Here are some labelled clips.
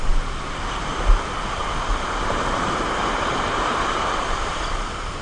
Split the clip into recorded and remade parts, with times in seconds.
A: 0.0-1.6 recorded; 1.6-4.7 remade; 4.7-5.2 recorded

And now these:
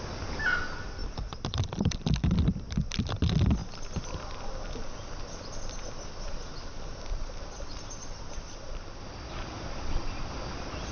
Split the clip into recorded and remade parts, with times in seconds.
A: 0.0-1.0 recorded; 1.0-2.5 remade; 2.5-7.1 recorded; 7.1-10.3 remade; 10.3-10.9 recorded

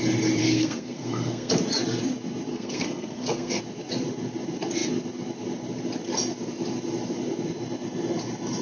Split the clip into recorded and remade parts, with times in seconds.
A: 0.0-0.4 recorded; 0.4-1.5 remade; 1.5-2.5 recorded; 2.5-3.6 remade; 3.6-8.6 recorded

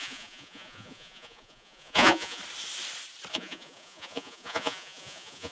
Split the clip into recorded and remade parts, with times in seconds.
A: 0.0-2.4 remade; 2.4-3.3 recorded; 3.3-5.5 remade

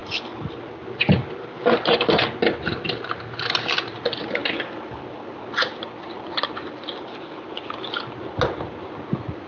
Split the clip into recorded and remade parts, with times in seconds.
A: 0.0-0.6 remade; 0.6-9.5 recorded

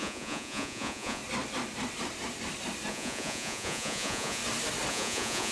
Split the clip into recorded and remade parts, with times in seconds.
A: 0.0-1.2 remade; 1.2-2.9 recorded; 2.9-4.4 remade; 4.4-4.9 recorded; 4.9-5.5 remade